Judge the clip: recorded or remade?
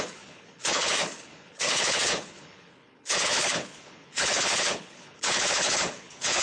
remade